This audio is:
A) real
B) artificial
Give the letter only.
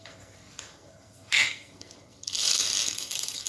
B